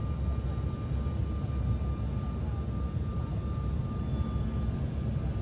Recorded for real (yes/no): yes